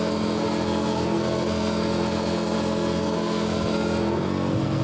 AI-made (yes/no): yes